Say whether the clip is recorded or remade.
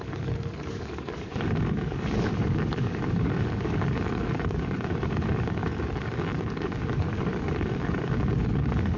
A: remade